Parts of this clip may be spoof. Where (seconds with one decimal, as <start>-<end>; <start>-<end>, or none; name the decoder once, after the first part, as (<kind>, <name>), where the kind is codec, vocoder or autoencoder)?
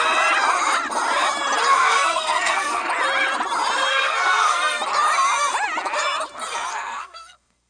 1.7-2.9 (codec, SNAC); 3.9-4.8; 6.7-7.7